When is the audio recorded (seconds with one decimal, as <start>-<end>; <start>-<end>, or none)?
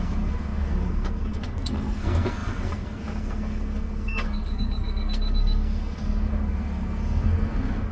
none